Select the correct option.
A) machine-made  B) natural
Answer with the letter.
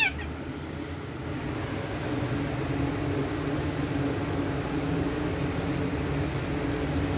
B